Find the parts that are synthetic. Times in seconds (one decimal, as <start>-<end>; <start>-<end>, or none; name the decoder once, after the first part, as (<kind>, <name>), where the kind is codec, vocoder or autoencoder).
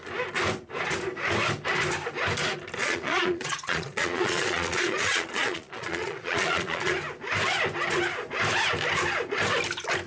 2.8-6.9 (vocoder, Vocos)